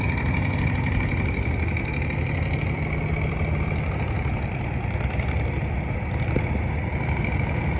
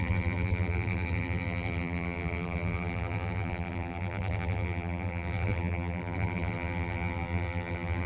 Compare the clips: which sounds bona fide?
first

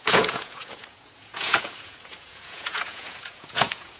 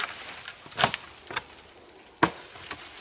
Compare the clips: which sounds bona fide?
second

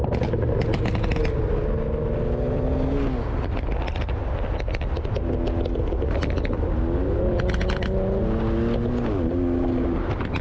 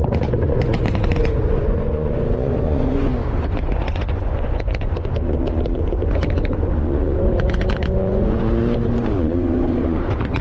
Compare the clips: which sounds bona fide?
first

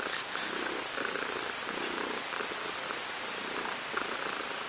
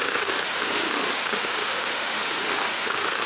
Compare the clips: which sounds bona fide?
first